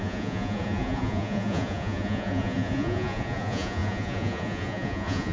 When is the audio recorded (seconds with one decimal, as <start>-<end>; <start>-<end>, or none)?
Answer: none